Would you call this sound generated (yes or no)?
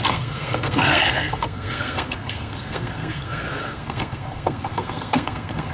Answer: yes